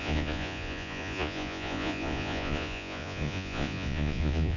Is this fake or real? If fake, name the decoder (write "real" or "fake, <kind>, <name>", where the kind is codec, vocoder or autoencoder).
fake, vocoder, Vocos